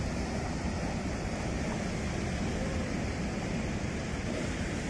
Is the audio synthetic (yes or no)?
no